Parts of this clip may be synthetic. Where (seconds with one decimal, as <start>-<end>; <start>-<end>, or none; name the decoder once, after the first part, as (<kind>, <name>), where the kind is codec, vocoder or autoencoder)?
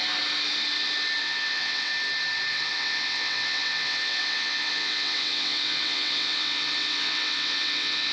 1.2-1.9 (vocoder, WaveNeXt); 2.5-8.1